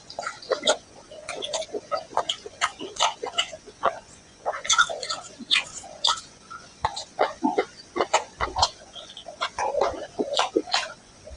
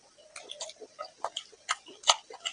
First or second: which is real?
second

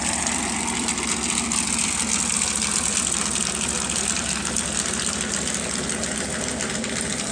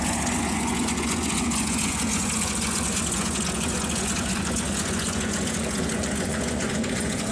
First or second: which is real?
first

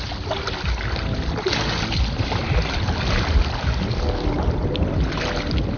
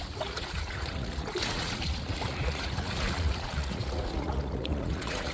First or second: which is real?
first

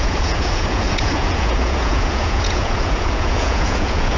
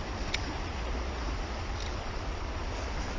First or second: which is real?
second